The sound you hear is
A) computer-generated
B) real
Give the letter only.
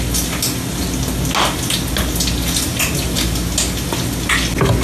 B